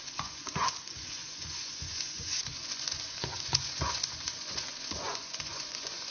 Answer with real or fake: fake